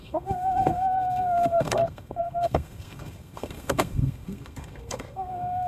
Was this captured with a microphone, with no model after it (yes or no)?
no